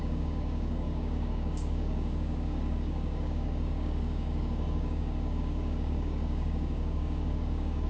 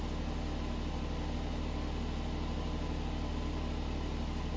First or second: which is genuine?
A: second